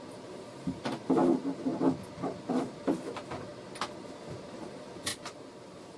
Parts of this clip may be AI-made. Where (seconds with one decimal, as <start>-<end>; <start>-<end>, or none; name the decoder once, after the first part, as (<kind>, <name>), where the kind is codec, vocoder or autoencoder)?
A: 0.0-1.7 (vocoder, BigVGAN v2); 2.5-3.5; 4.0-6.0